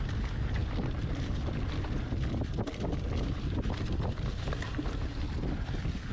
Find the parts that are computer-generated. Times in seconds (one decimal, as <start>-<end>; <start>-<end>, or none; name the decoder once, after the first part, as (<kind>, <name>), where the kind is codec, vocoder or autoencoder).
0.6-2.3 (vocoder, BigVGAN v2)